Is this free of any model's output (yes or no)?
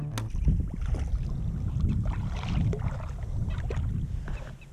yes